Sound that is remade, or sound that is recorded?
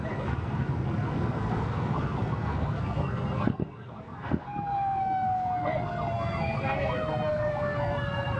remade